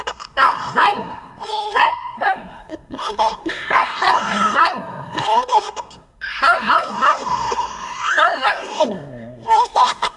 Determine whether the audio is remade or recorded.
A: remade